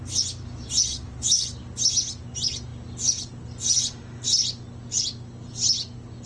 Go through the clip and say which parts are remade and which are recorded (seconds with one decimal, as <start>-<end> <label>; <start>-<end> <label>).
0.0-0.9 recorded; 0.9-1.4 remade; 1.4-6.3 recorded